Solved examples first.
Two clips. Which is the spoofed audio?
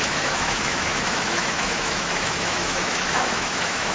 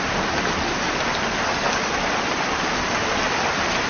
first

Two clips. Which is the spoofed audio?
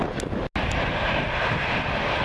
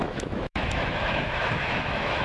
second